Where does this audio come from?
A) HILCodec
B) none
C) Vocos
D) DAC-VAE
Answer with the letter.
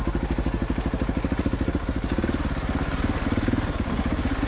B